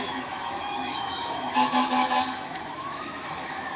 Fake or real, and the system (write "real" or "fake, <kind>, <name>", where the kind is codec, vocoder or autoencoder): fake, autoencoder, DAC-VAE